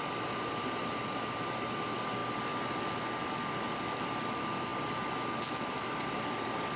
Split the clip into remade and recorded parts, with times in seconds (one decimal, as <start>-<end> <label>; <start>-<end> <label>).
0.0-2.2 remade; 2.2-3.9 recorded; 3.9-4.7 remade; 4.7-5.3 recorded; 5.3-6.8 remade